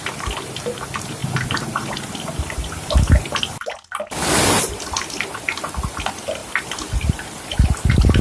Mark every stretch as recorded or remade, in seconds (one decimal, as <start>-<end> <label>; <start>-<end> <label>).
0.0-8.2 recorded

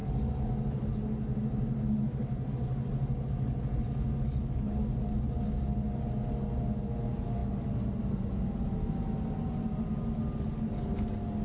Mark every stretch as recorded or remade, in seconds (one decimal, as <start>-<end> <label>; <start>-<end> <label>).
0.0-11.4 recorded

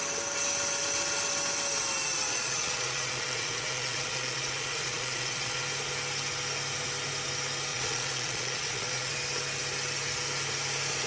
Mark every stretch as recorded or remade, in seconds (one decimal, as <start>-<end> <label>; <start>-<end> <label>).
0.0-2.3 recorded; 2.3-5.6 remade; 5.6-7.7 recorded; 7.7-9.1 remade; 9.1-11.1 recorded

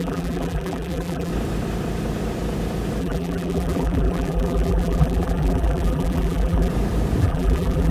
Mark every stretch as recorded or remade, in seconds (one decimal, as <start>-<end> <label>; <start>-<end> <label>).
0.0-1.3 remade; 1.3-3.0 recorded; 3.0-6.7 remade; 6.7-7.2 recorded; 7.2-7.9 remade

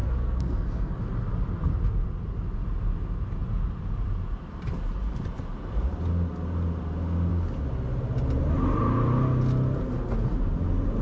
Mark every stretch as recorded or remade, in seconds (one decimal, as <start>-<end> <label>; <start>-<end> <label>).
0.0-1.0 remade; 1.0-11.0 recorded

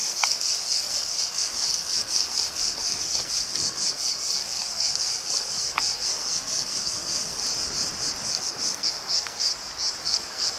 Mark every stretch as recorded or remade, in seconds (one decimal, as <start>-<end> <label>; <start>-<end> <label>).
0.0-7.4 remade; 7.4-8.3 recorded; 8.3-9.5 remade; 9.5-10.0 recorded; 10.0-10.6 remade

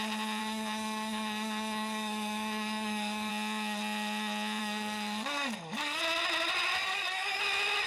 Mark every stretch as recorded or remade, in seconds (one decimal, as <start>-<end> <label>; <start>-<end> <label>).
0.0-0.4 recorded; 0.4-3.3 remade; 3.3-4.6 recorded; 4.6-6.0 remade; 6.0-6.8 recorded; 6.8-7.4 remade; 7.4-7.9 recorded